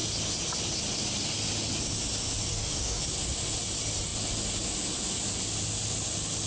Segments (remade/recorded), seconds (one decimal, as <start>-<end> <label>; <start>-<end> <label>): 0.0-2.5 recorded; 2.5-3.0 remade; 3.0-6.5 recorded